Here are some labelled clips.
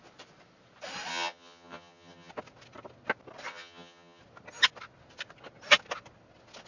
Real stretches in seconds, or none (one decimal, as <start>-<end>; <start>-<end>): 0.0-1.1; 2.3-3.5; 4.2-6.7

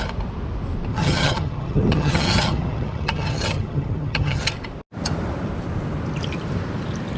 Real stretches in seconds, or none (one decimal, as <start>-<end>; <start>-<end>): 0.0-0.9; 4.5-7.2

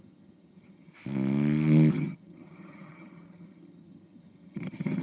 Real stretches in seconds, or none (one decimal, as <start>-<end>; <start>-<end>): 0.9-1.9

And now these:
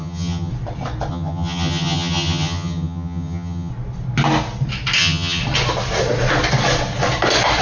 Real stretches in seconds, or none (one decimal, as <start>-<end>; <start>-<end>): 0.5-1.1; 3.7-5.0; 5.4-7.6

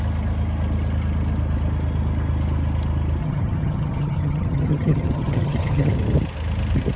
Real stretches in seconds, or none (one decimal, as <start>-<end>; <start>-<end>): 0.0-3.2; 5.9-7.0

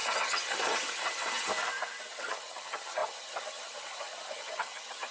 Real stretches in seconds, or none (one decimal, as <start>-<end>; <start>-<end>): 1.5-2.1